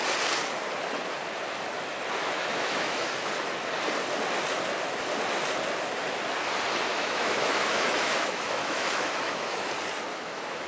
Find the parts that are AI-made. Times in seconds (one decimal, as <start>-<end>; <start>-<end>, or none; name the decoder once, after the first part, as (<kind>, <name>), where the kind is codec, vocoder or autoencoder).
2.2-3.3 (autoencoder, DAC-VAE); 6.9-9.7; 10.1-10.7